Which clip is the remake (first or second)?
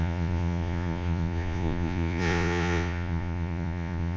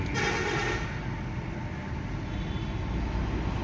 first